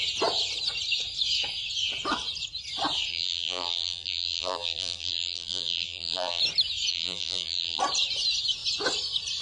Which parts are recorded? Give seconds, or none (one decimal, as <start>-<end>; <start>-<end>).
0.0-3.1; 6.4-6.9; 7.8-9.4